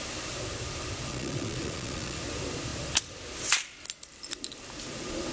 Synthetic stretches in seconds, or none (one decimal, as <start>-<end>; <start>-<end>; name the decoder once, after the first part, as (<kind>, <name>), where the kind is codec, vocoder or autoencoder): 1.1-2.2 (vocoder, Vocos)